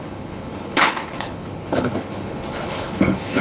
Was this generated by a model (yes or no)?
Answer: yes